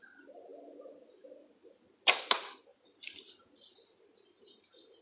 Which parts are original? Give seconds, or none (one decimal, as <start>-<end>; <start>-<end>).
0.0-5.0